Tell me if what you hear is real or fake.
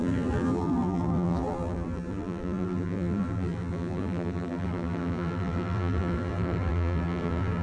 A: fake